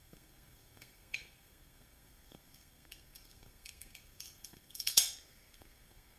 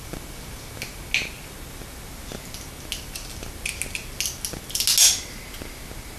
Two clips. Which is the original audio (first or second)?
second